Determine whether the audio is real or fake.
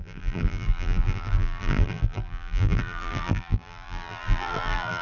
fake